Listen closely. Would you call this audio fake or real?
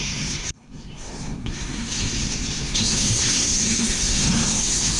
fake